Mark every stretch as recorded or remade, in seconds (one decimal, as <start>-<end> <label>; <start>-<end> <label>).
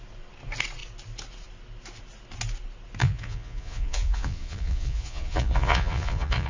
0.0-3.0 recorded; 3.0-6.5 remade